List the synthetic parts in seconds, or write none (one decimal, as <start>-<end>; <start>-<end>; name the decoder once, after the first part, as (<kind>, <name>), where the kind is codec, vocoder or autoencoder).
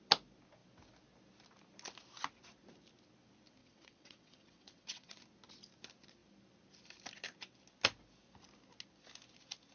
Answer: 3.6-5.2 (vocoder, WaveNeXt)